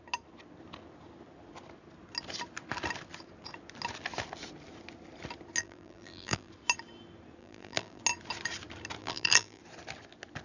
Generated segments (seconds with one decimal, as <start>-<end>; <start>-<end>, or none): 5.6-6.5; 7.4-8.0; 9.0-9.6